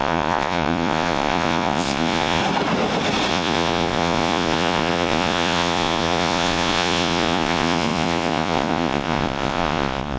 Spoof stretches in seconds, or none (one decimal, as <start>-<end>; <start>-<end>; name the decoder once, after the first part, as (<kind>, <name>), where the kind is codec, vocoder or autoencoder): 0.0-2.4 (vocoder, Vocos); 3.3-10.2